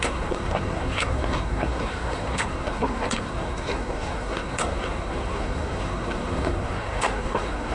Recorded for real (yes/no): no